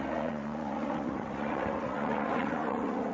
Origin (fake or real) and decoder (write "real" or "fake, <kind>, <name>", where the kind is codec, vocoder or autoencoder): fake, vocoder, Vocos